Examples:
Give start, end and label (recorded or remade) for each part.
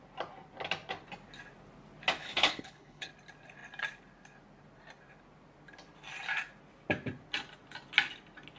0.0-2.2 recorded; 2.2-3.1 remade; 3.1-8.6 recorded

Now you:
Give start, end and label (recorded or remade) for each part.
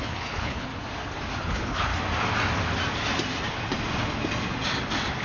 0.0-0.7 remade; 0.7-1.4 recorded; 1.4-1.9 remade; 1.9-5.2 recorded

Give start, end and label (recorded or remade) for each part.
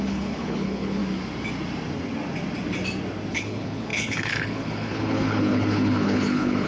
0.0-1.0 remade; 1.0-3.3 recorded; 3.3-6.7 remade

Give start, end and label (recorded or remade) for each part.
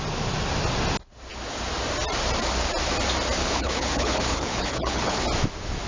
0.0-3.4 recorded; 3.4-5.2 remade; 5.2-5.9 recorded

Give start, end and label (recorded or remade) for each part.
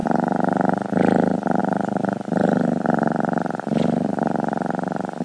0.0-5.2 recorded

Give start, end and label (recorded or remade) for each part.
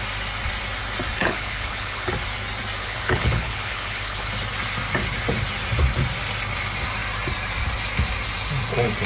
0.0-1.2 recorded; 1.2-2.1 remade; 2.1-2.8 recorded; 2.8-4.3 remade; 4.3-9.1 recorded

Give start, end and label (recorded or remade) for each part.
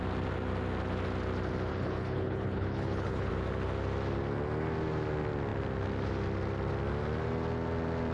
0.0-1.7 recorded; 1.7-3.3 remade; 3.3-8.1 recorded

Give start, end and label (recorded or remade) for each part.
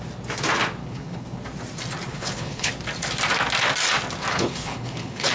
0.0-0.8 recorded; 0.8-1.4 remade; 1.4-2.1 recorded; 2.1-2.7 remade; 2.7-4.3 recorded; 4.3-5.3 remade